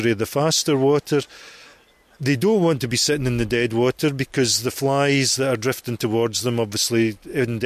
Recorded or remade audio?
recorded